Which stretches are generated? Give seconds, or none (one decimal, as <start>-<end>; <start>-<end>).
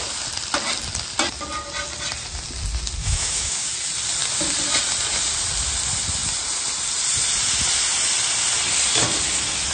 3.0-3.7